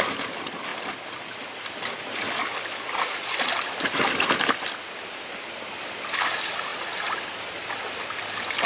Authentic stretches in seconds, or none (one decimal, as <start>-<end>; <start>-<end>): 0.0-8.7